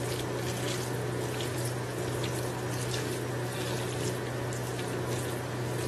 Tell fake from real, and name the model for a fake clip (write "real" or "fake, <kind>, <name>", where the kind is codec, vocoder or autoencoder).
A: real